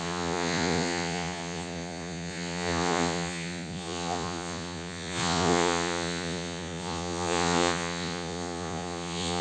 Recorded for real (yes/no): no